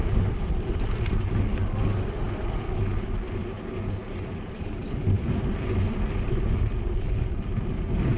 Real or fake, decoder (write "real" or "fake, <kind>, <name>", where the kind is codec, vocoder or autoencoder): real